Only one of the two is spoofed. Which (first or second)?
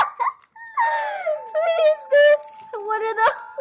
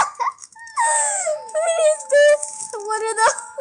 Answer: second